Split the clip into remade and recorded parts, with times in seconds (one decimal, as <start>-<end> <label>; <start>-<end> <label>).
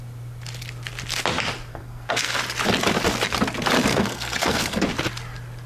0.0-1.7 recorded; 1.7-2.4 remade; 2.4-3.9 recorded; 3.9-4.9 remade; 4.9-5.7 recorded